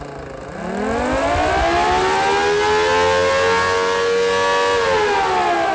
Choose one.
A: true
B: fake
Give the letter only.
A